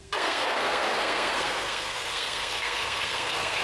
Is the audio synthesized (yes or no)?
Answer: yes